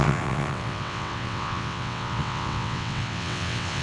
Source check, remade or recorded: remade